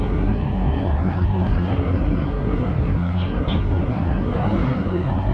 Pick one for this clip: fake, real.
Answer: fake